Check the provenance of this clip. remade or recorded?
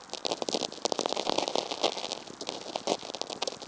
recorded